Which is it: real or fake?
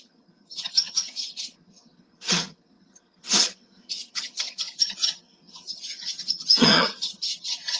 fake